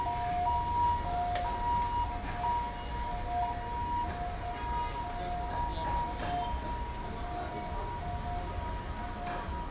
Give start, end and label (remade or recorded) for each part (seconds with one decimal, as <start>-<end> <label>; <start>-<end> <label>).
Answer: 0.0-9.7 recorded